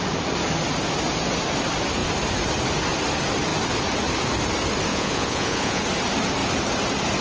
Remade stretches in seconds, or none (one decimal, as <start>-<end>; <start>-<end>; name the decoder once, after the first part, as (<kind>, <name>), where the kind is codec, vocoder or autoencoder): 4.9-5.8 (vocoder, Vocos)